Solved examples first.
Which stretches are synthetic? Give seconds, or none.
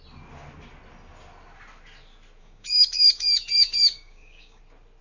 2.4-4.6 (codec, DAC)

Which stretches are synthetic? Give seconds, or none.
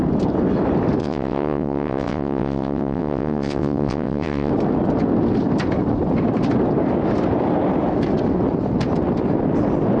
1.0-4.5 (vocoder, WaveNeXt)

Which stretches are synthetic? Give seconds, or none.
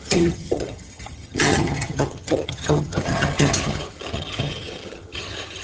0.0-5.6 (vocoder, HiFi-GAN)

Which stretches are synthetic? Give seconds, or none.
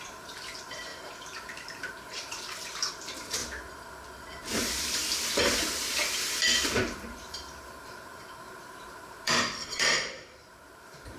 0.0-3.4 (vocoder, BigVGAN v2); 4.6-5.0; 5.9-11.2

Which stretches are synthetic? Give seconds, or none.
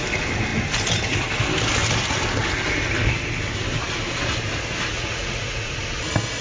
4.9-5.8 (vocoder, Vocos)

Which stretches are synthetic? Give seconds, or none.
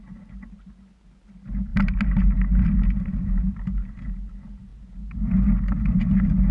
none